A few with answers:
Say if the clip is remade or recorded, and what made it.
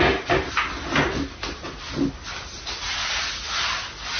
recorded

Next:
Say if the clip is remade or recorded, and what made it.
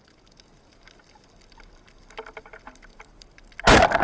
recorded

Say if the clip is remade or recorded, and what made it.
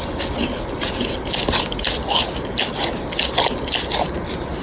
recorded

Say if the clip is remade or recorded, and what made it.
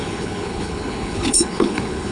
remade, codec, HILCodec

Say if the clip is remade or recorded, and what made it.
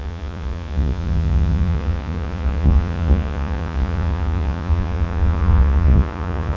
remade, vocoder, Vocos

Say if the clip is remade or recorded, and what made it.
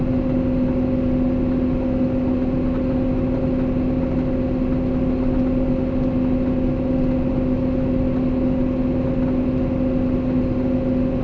recorded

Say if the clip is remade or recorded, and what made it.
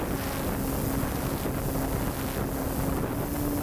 recorded